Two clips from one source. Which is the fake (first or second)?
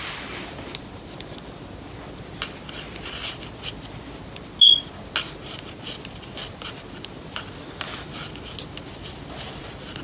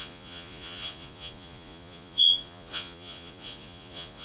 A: second